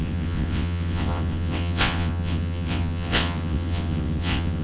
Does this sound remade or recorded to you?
remade